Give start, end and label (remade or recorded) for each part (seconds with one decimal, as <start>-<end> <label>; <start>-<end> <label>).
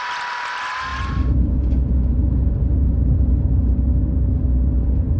0.0-5.2 recorded